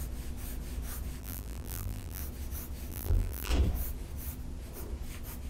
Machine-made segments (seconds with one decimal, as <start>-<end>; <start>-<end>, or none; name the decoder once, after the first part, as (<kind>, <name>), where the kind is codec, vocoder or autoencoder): 1.2-2.2 (vocoder, BigVGAN v2); 2.9-3.5

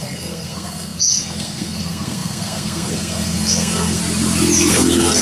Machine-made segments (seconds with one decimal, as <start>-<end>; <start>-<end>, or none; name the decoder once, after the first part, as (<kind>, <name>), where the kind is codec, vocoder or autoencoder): 0.0-4.0 (codec, SNAC); 4.7-5.2